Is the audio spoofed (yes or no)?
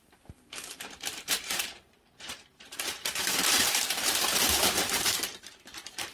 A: yes